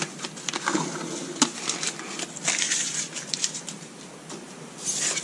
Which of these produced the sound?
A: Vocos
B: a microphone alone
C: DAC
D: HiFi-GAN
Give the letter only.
B